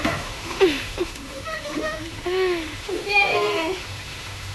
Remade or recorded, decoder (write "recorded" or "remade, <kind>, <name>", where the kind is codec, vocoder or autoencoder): remade, autoencoder, DAC-VAE